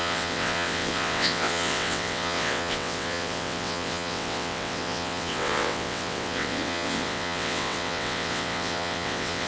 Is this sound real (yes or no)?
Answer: no